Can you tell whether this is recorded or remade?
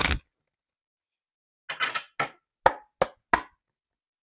recorded